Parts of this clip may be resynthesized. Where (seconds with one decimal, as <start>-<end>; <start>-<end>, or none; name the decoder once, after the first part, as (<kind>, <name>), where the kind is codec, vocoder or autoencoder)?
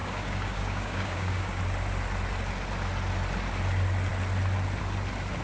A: 0.0-1.6 (codec, DAC)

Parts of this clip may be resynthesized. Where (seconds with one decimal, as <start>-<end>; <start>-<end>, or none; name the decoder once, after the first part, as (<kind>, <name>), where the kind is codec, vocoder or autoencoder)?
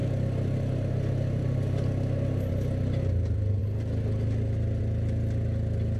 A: none